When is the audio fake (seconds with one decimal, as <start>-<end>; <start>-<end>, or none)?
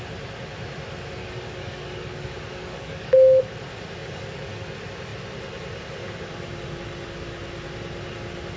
1.2-3.4; 4.0-4.5